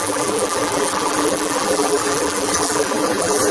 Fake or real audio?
fake